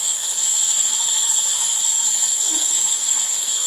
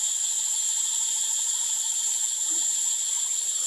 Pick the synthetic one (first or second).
first